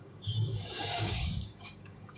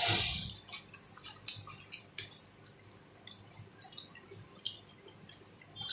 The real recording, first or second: second